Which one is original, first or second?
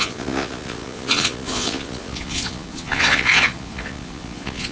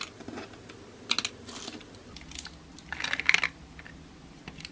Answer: second